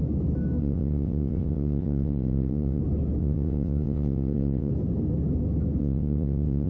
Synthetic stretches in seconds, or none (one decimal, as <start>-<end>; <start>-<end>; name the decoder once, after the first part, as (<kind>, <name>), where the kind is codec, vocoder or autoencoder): 0.6-2.8 (vocoder, WaveNeXt); 3.2-4.7; 5.8-6.7